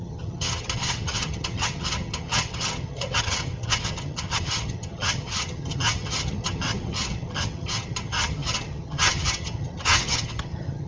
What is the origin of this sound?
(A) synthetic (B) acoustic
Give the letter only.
A